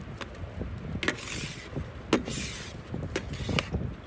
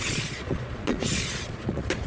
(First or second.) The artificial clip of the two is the second